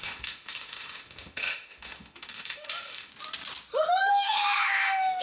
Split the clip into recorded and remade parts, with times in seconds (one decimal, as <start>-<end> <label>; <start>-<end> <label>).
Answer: 0.0-3.1 remade; 3.1-4.1 recorded; 4.1-5.2 remade